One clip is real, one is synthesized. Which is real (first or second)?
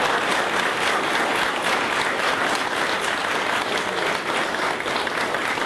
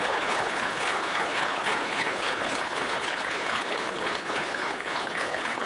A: first